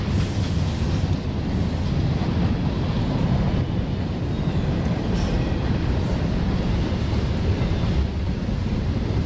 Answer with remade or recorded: recorded